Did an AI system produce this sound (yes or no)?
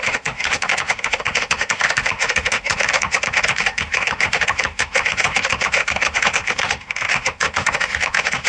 yes